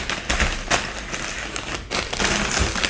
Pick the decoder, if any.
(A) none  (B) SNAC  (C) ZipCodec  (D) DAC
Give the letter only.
A